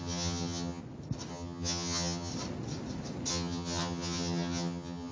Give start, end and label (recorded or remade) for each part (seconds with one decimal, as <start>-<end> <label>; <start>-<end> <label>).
0.0-0.8 remade; 0.8-1.3 recorded; 1.3-2.3 remade; 2.3-3.3 recorded; 3.3-5.1 remade